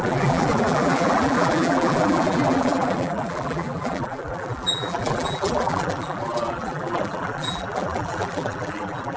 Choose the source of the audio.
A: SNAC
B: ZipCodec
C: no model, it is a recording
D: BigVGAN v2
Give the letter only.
D